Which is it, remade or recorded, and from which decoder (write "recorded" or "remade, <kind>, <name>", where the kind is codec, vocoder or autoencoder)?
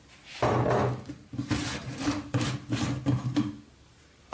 recorded